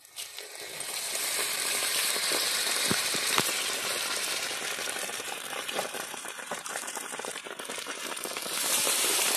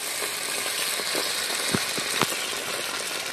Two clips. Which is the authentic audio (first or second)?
second